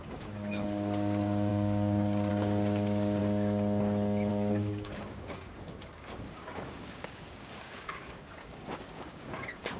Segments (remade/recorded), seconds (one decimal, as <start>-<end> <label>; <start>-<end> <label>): 0.0-3.2 remade; 3.2-4.3 recorded; 4.3-9.8 remade